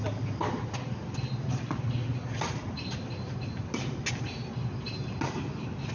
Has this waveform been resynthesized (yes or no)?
no